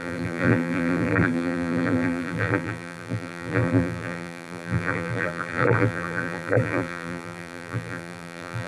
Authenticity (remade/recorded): remade